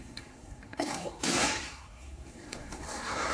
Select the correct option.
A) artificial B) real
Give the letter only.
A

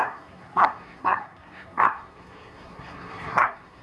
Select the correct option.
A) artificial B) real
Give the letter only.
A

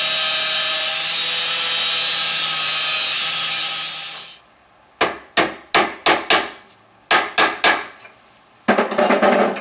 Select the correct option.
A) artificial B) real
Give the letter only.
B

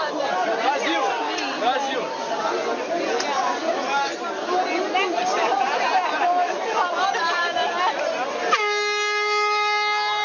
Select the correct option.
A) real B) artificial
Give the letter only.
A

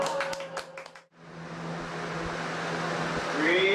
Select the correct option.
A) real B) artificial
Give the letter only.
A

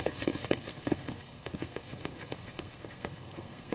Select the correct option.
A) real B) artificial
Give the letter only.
B